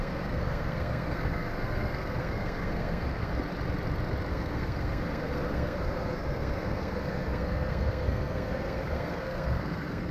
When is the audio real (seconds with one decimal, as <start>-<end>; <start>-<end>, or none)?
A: 3.3-4.3